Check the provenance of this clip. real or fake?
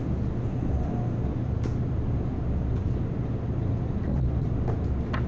real